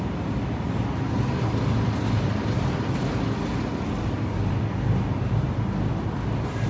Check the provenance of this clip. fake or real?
real